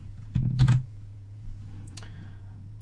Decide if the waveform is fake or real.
fake